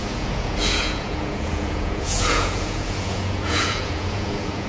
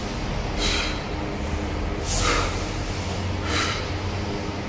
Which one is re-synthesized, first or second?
first